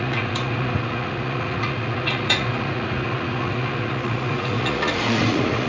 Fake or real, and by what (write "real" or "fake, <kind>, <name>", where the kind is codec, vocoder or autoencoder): fake, vocoder, Vocos